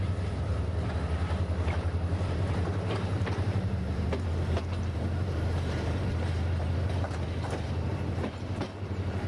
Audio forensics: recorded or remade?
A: remade